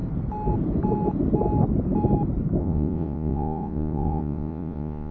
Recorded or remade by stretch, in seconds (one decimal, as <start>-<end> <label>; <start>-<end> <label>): 0.0-2.6 recorded; 2.6-5.1 remade